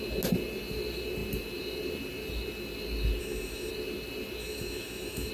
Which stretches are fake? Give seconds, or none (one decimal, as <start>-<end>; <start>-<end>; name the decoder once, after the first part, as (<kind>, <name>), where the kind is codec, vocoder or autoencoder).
3.2-3.7 (autoencoder, DAC-VAE); 4.4-5.3